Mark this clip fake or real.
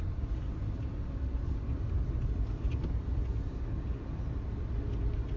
real